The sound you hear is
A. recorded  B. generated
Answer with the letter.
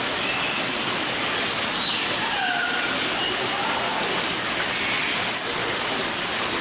A